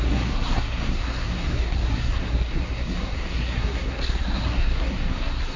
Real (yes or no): no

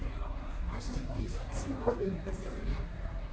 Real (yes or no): no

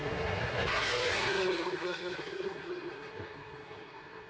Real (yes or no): no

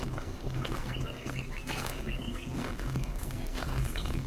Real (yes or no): no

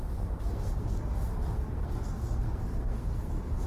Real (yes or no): no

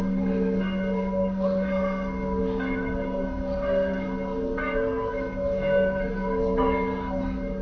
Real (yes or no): no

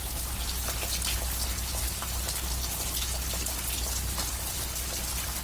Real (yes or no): yes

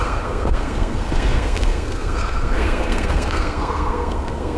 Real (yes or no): no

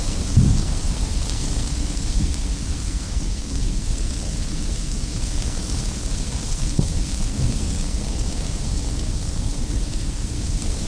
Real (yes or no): no